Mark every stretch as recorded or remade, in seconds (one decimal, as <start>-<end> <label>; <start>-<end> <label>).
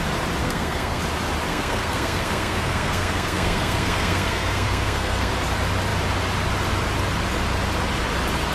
0.0-0.4 recorded; 0.4-1.0 remade; 1.0-1.5 recorded; 1.5-5.3 remade; 5.3-8.5 recorded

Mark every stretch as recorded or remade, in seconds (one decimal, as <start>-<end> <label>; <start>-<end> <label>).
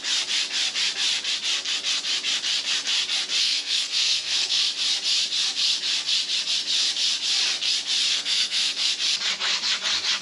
0.0-3.4 recorded; 3.4-4.6 remade; 4.6-8.1 recorded; 8.1-8.9 remade; 8.9-10.2 recorded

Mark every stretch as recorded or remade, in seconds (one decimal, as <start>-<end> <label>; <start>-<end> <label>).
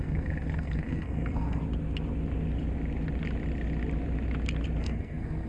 0.0-1.6 remade; 1.6-4.8 recorded; 4.8-5.5 remade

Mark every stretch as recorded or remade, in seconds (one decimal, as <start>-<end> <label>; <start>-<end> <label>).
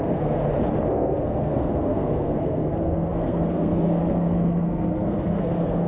0.0-0.4 remade; 0.4-0.9 recorded; 0.9-5.9 remade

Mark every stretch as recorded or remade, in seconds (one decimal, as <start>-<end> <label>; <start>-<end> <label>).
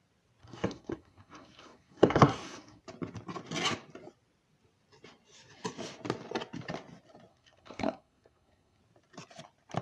0.0-0.4 recorded; 0.4-2.8 remade; 2.8-7.3 recorded; 7.3-8.8 remade; 8.8-9.8 recorded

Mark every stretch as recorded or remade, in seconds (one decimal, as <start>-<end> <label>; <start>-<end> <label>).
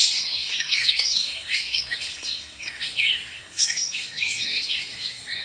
0.0-5.4 remade